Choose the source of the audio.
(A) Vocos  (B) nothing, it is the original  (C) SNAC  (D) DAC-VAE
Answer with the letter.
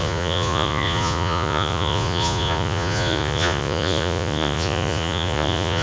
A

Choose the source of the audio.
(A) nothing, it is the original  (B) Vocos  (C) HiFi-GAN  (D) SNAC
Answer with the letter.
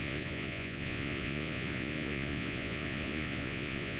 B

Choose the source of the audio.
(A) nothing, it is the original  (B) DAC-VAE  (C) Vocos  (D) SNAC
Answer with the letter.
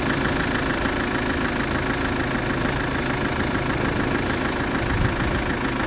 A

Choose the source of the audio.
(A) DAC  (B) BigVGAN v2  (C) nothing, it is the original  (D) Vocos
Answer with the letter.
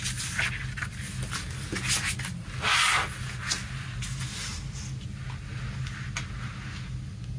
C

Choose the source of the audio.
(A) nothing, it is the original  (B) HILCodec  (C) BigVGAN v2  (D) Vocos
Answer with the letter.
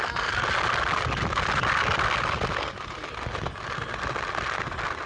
A